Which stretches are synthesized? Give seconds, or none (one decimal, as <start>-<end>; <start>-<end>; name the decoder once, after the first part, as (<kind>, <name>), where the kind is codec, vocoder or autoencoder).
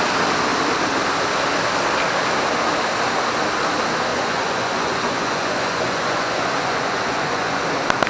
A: 4.1-7.6 (vocoder, Vocos)